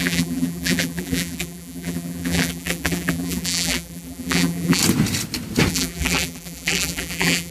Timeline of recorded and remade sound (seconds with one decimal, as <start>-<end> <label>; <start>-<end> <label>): 0.0-4.8 remade; 4.8-5.7 recorded; 5.7-7.5 remade